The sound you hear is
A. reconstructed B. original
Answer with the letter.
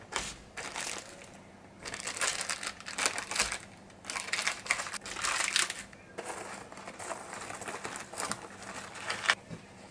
B